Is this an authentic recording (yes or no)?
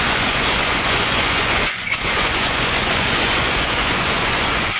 no